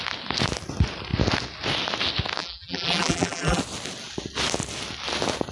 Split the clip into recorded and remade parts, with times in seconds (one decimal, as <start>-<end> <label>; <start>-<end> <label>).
0.0-2.4 recorded; 2.4-3.6 remade; 3.6-5.5 recorded